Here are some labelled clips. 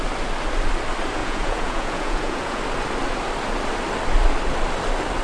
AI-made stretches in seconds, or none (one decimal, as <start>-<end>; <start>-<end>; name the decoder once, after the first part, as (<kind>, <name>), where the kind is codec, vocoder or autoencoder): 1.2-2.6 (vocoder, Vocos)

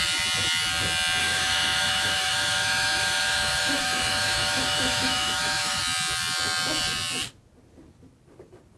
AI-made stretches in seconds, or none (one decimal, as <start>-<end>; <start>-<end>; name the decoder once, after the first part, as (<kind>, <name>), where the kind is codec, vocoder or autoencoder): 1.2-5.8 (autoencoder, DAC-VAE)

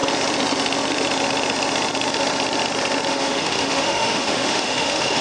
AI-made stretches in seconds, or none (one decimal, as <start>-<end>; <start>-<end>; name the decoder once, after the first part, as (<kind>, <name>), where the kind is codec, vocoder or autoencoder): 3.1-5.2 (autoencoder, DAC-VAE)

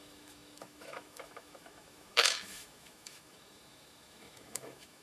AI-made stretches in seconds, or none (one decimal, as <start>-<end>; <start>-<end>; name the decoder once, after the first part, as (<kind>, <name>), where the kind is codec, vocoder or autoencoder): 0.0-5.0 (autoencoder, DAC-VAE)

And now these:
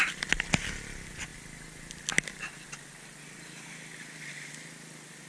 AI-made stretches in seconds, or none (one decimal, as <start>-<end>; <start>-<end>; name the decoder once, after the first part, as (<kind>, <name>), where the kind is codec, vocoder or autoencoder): none

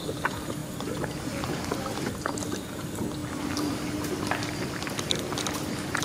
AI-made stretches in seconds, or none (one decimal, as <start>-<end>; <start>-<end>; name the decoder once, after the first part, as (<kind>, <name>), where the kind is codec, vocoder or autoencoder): none

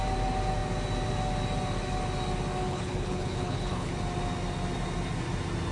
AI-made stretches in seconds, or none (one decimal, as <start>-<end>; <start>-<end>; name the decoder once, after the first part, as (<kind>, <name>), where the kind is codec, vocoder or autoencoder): 2.6-3.9 (codec, HILCodec)

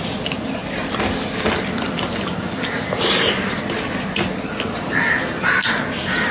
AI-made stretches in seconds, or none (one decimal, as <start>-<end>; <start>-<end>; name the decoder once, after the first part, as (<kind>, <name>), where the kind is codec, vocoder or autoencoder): none